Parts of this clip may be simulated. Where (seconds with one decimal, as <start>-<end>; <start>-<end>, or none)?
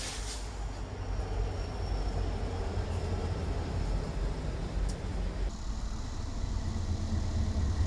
none